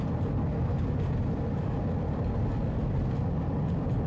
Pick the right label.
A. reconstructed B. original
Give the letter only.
B